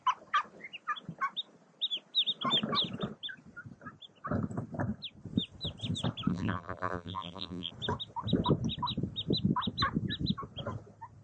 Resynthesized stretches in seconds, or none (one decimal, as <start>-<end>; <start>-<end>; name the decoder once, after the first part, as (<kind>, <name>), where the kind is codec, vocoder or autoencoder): 6.3-7.7 (vocoder, BigVGAN v2)